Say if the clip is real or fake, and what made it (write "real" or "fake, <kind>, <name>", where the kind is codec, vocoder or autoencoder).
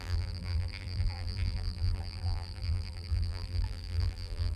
fake, vocoder, BigVGAN v2